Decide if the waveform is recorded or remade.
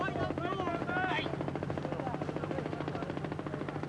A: recorded